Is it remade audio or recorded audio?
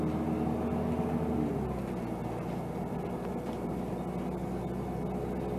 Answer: recorded